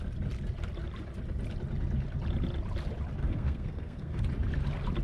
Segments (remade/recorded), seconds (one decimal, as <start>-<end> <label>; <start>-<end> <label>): 0.0-3.2 recorded; 3.2-4.2 remade; 4.2-5.0 recorded